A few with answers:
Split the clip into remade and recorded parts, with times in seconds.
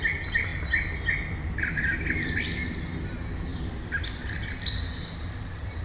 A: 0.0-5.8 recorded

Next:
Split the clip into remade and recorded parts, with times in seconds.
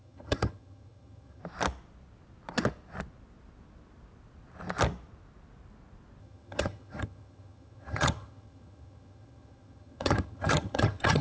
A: 0.0-1.4 remade; 1.4-6.2 recorded; 6.2-11.2 remade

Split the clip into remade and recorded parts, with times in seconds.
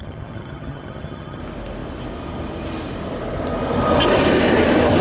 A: 0.0-1.4 remade; 1.4-5.0 recorded